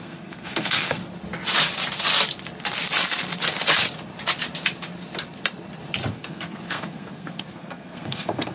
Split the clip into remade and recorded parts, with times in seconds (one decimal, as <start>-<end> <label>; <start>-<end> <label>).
0.0-1.0 remade; 1.0-6.1 recorded; 6.1-8.5 remade